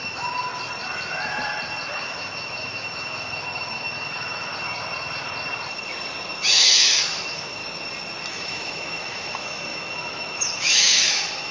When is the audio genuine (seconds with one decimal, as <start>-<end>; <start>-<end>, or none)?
0.5-1.9; 4.5-6.5; 7.6-8.3